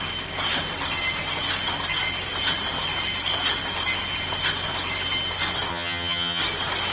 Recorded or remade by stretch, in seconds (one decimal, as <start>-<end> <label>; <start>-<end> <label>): 0.0-5.7 recorded; 5.7-6.4 remade; 6.4-6.9 recorded